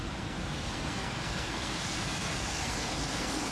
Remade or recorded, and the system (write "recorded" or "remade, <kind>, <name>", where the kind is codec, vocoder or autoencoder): remade, codec, SNAC